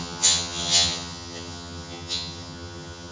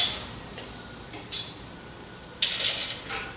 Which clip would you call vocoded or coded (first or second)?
first